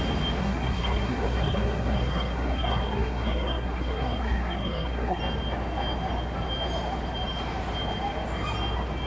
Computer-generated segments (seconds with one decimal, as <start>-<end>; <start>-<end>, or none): 0.4-5.2